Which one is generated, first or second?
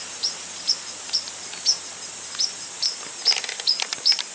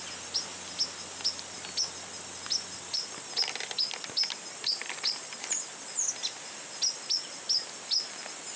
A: first